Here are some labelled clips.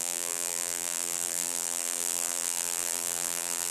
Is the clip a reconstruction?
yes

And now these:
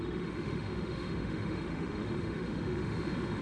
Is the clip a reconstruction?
yes